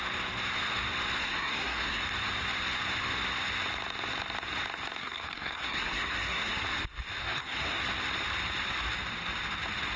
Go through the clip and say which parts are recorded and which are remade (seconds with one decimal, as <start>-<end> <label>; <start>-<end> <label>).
0.0-1.2 recorded; 1.2-2.0 remade; 2.0-5.0 recorded; 5.0-6.6 remade; 6.6-7.2 recorded; 7.2-7.8 remade; 7.8-10.0 recorded